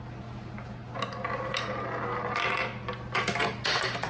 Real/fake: real